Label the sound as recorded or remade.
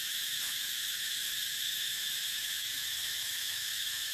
remade